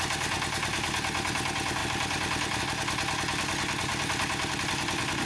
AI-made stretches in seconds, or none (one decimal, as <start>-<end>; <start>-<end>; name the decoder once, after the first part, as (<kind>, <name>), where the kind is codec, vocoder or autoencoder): 1.8-2.6 (vocoder, BigVGAN v2); 3.9-4.6